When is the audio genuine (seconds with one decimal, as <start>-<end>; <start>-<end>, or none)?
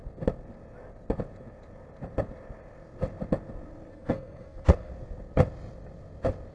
0.0-3.9; 4.9-6.5